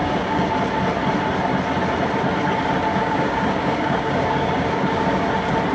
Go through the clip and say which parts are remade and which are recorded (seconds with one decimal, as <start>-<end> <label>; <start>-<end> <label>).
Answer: 0.0-0.5 remade; 0.5-2.9 recorded; 2.9-5.3 remade; 5.3-5.7 recorded